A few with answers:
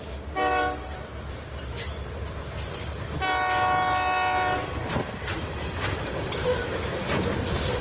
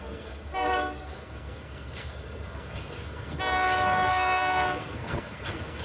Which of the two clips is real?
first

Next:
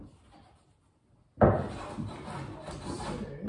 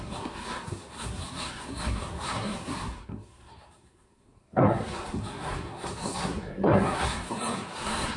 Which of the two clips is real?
first